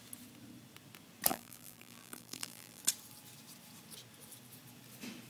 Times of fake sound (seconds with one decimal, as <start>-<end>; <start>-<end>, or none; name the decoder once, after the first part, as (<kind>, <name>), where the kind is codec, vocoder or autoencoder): 1.3-2.8 (vocoder, BigVGAN v2)